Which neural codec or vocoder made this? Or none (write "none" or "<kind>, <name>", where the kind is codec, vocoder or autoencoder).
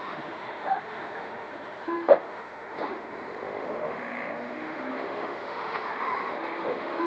autoencoder, DAC-VAE